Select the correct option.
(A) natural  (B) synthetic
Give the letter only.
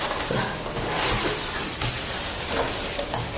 A